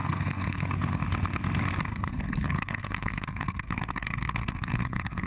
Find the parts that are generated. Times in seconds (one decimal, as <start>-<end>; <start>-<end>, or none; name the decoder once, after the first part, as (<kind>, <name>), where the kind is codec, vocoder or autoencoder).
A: 0.0-1.0 (codec, SNAC); 1.9-5.3